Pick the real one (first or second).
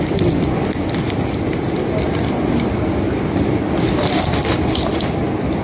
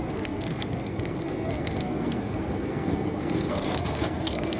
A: first